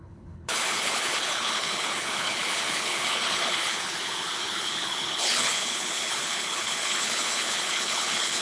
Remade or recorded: remade